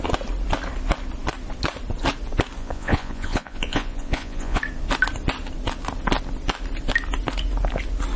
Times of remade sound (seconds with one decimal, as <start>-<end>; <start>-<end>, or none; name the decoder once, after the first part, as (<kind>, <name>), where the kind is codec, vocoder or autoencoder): 2.6-4.6 (vocoder, Vocos)